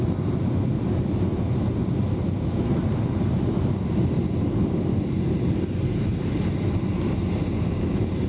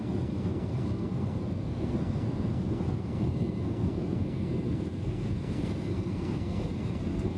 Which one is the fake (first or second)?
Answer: second